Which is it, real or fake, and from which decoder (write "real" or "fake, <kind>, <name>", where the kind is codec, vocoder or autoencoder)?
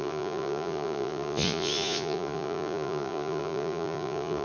fake, vocoder, Vocos